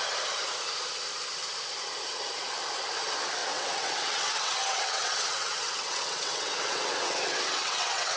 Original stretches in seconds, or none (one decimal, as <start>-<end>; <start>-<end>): 0.0-3.4